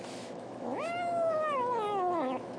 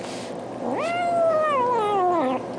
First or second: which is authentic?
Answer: second